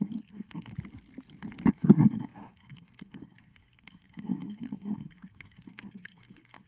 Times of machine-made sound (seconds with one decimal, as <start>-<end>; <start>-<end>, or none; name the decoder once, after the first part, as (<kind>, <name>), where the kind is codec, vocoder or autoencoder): 0.0-0.7 (codec, SNAC); 1.7-6.7